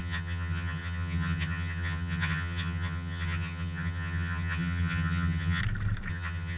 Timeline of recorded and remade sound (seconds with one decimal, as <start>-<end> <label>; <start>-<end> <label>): 0.0-5.6 remade; 5.6-6.1 recorded; 6.1-6.6 remade